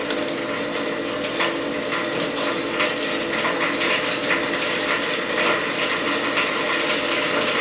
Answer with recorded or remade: recorded